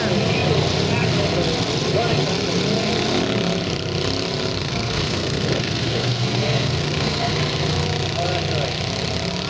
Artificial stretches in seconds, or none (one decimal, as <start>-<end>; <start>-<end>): 4.6-7.3